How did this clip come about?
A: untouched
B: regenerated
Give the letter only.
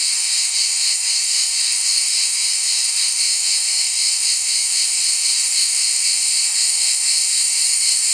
B